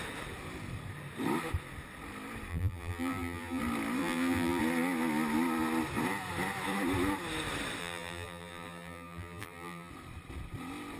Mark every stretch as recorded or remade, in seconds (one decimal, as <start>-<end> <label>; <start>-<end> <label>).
0.0-2.5 recorded; 2.5-3.6 remade; 3.6-4.0 recorded; 4.0-4.6 remade; 4.6-7.8 recorded; 7.8-9.9 remade; 9.9-11.0 recorded